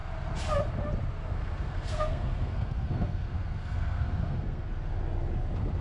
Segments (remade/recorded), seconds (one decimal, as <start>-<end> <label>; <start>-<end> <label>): 0.0-1.2 recorded; 1.2-4.7 remade; 4.7-5.8 recorded